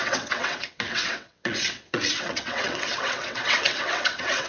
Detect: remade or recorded remade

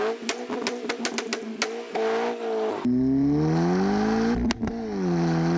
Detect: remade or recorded recorded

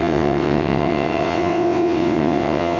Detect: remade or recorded remade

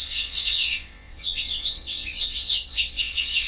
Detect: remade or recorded remade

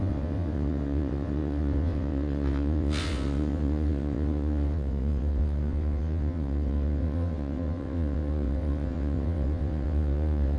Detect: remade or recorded remade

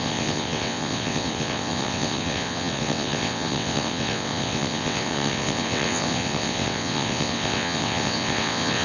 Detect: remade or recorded remade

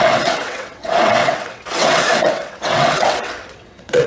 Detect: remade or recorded remade